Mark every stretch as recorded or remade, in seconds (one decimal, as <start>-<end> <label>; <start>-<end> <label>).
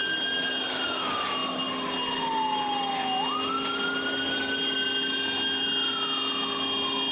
0.0-7.1 recorded